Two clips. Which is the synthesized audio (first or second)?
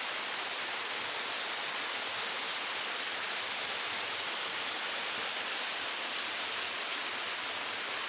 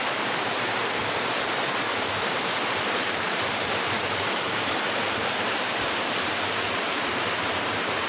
second